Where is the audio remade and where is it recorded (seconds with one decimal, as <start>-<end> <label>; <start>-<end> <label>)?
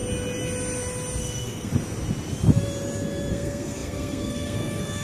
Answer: 0.0-1.2 recorded; 1.2-1.7 remade; 1.7-3.3 recorded; 3.3-5.0 remade